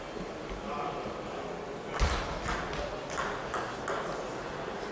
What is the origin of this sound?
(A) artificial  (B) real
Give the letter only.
B